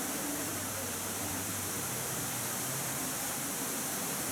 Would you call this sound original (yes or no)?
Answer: no